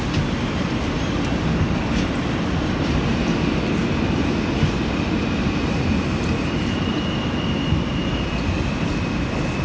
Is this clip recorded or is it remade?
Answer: recorded